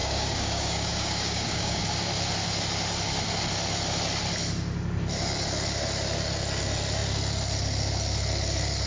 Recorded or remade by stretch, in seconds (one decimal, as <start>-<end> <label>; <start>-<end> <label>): 0.0-1.8 remade; 1.8-8.9 recorded